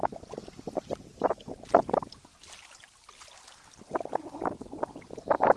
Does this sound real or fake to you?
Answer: real